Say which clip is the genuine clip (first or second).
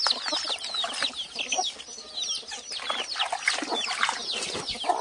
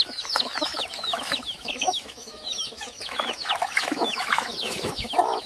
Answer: first